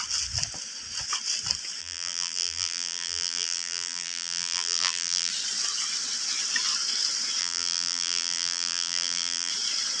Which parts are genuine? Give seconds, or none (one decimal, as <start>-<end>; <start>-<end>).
0.0-1.8; 5.3-7.4; 9.5-10.0